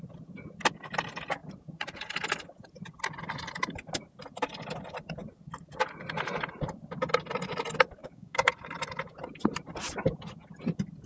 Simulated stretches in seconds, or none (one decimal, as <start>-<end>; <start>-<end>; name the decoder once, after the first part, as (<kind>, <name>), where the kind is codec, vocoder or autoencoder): 8.0-8.5 (codec, DAC)